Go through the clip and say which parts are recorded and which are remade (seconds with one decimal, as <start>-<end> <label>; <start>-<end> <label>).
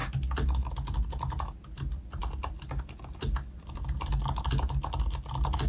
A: 0.0-5.7 recorded